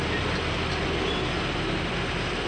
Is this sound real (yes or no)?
yes